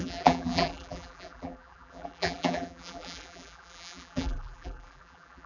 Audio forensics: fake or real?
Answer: fake